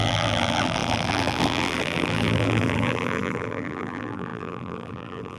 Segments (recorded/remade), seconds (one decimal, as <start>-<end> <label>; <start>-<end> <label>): 0.0-5.4 remade